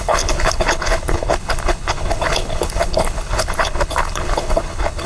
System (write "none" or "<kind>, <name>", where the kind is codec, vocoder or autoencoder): codec, HILCodec